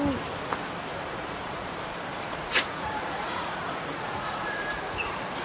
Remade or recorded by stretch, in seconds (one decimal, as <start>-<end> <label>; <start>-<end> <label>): 0.0-0.9 recorded; 0.9-1.7 remade; 1.7-2.1 recorded; 2.1-5.4 remade